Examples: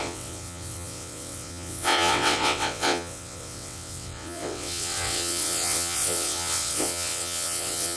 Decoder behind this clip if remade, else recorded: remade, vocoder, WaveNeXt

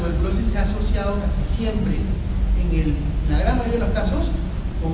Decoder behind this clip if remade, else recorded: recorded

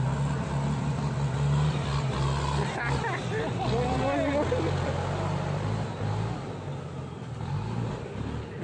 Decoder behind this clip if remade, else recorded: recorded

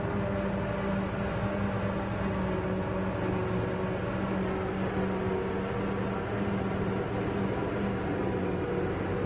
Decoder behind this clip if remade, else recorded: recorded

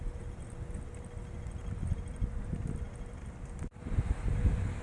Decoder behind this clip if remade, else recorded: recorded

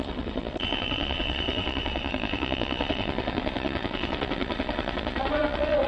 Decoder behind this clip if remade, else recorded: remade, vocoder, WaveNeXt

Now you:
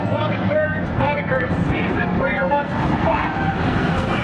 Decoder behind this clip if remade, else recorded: remade, codec, SNAC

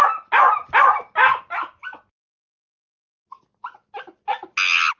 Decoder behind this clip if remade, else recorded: recorded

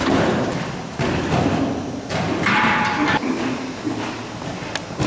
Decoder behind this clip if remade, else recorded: recorded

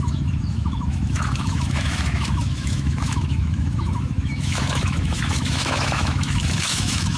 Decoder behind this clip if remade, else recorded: remade, autoencoder, DAC-VAE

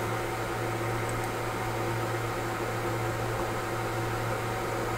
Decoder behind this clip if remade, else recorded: recorded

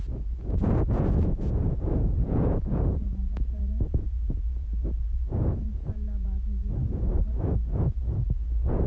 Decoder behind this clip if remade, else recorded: remade, vocoder, Vocos